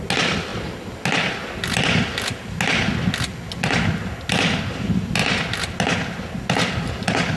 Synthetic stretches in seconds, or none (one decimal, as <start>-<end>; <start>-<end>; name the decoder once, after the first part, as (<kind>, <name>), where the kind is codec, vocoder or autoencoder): none